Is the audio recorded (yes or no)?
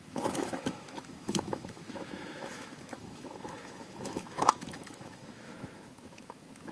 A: no